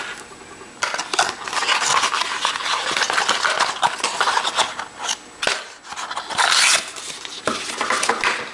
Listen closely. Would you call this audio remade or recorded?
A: recorded